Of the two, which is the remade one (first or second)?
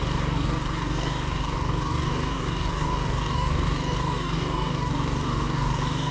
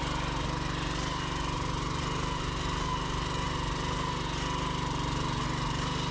first